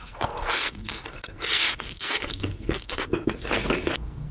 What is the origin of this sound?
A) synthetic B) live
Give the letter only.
A